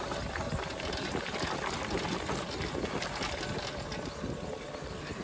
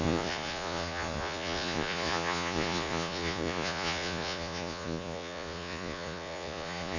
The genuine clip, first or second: first